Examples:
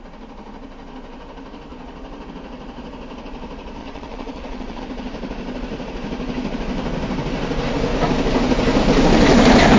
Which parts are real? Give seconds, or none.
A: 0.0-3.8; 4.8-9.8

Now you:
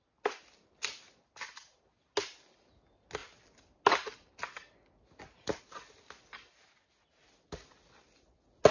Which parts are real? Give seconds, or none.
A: 0.0-8.7